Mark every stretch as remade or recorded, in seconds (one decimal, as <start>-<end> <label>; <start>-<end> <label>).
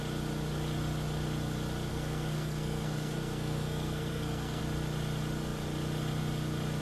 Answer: 0.0-1.9 recorded; 1.9-4.6 remade; 4.6-6.8 recorded